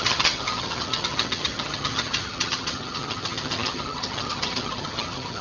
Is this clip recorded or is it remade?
remade